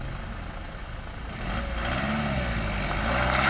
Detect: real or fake real